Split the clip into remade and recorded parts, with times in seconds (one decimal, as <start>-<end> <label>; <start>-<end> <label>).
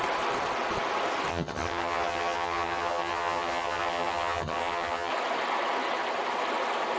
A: 0.0-1.3 recorded; 1.3-5.1 remade; 5.1-7.0 recorded